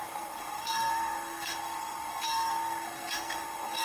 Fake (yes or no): yes